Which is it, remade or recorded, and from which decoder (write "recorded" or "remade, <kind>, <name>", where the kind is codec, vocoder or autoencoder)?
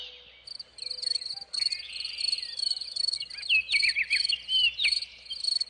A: recorded